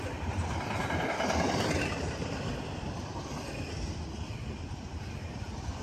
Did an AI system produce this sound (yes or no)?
yes